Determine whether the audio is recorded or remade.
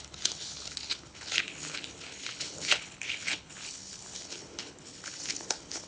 remade